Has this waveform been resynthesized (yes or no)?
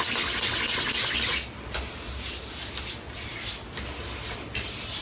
no